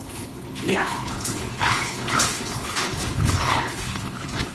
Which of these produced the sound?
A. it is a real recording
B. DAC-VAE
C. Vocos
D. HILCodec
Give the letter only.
D